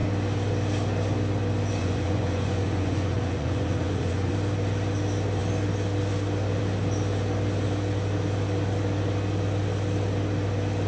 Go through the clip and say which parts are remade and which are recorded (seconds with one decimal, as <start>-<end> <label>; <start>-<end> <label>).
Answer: 0.0-1.8 recorded; 1.8-4.3 remade; 4.3-10.9 recorded